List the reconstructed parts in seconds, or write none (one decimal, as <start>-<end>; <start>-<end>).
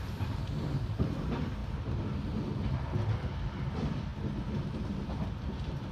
0.0-1.6; 2.5-4.1; 5.3-5.9